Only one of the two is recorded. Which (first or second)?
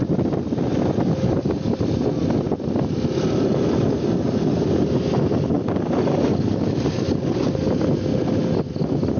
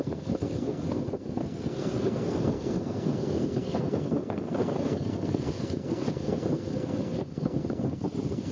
first